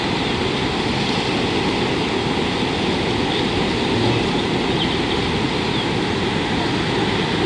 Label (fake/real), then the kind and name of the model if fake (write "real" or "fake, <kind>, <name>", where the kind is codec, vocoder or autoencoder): real